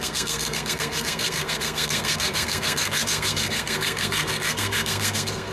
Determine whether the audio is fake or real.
fake